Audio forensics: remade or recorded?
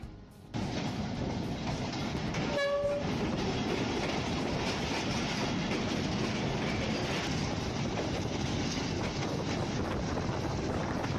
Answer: recorded